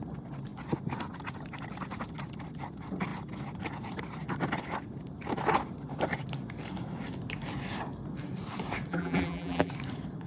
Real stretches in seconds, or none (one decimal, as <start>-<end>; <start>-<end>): 0.0-8.9; 9.7-10.3